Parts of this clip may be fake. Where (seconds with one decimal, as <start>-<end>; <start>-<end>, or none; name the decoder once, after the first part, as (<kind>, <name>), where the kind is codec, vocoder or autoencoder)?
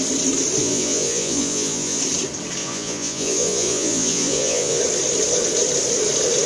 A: 0.6-2.0 (vocoder, Vocos); 2.6-4.8